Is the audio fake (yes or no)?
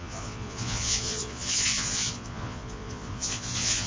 yes